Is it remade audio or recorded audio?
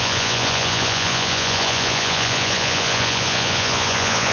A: remade